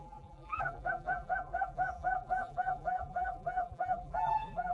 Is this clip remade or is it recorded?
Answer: remade